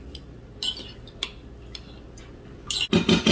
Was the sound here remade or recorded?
recorded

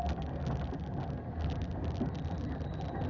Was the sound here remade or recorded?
recorded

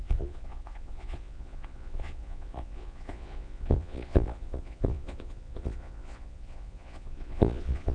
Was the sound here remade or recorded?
remade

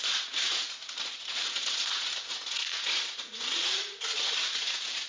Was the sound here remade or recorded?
remade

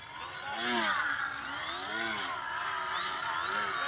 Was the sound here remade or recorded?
recorded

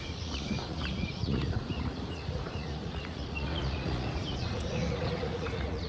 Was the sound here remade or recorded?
remade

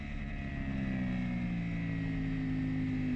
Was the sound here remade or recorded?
recorded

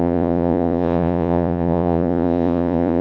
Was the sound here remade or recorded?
remade